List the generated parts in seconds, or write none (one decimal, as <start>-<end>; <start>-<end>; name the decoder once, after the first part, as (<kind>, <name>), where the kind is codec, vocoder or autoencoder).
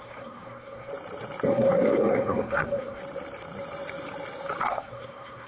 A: 0.0-0.9 (codec, SNAC); 1.5-3.0; 4.6-5.5